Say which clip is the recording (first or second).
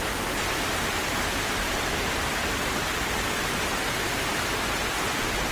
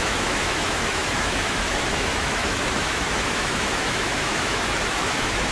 first